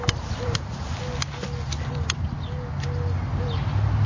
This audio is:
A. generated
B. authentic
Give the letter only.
B